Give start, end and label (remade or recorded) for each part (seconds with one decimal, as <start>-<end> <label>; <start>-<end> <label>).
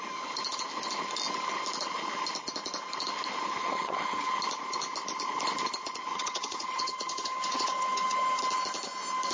0.0-3.6 recorded; 3.6-4.4 remade; 4.4-6.1 recorded; 6.1-8.4 remade; 8.4-9.3 recorded